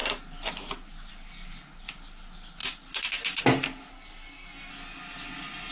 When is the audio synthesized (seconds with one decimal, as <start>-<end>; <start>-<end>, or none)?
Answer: 3.9-4.7